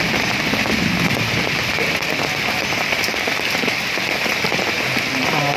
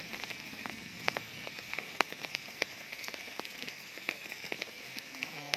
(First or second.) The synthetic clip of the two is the second